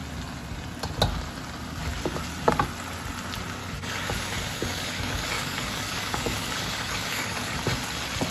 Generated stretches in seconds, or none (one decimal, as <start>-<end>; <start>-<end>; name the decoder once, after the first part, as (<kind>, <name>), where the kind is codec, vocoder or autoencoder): 3.6-7.6 (codec, DAC)